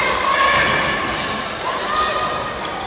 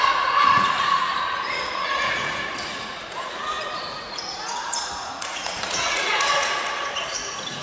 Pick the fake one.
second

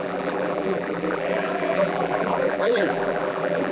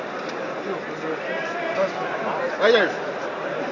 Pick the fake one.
first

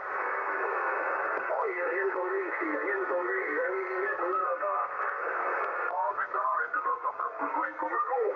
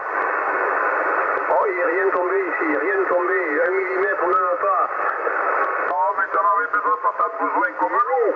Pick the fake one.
first